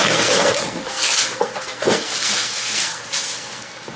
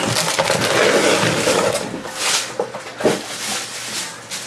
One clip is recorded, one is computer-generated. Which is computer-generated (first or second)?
first